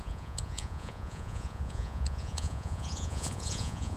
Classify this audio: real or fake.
fake